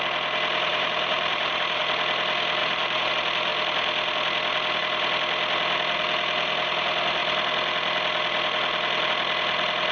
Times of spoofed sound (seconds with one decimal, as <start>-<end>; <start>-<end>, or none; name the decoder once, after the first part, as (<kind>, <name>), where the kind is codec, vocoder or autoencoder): 0.7-1.8 (vocoder, BigVGAN v2); 2.6-3.1

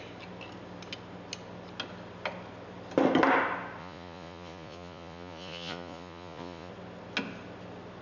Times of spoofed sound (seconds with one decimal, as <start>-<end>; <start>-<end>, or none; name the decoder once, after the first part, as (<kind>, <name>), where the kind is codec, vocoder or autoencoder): 3.8-6.7 (vocoder, Vocos)